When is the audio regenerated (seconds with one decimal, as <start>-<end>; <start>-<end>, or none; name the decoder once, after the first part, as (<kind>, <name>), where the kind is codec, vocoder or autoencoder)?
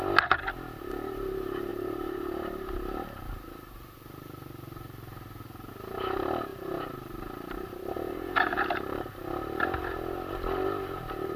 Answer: 1.7-5.7 (vocoder, BigVGAN v2); 6.5-9.2